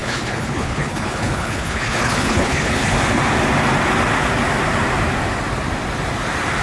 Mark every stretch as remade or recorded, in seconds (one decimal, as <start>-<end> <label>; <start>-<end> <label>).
0.0-2.9 remade; 2.9-6.6 recorded